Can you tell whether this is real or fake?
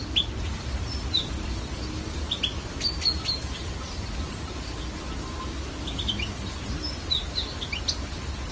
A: real